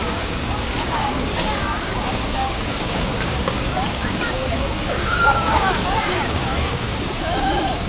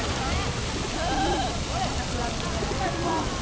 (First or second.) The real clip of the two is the second